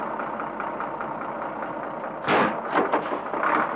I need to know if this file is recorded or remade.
recorded